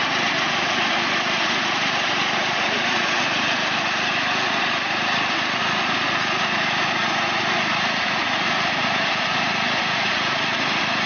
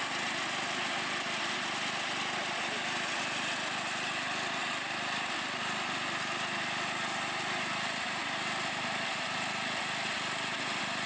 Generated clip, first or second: first